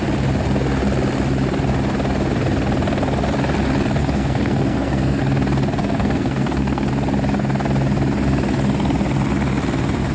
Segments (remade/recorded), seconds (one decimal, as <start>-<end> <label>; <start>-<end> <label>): 0.0-4.0 recorded; 4.0-5.2 remade; 5.2-5.8 recorded; 5.8-6.9 remade; 6.9-10.1 recorded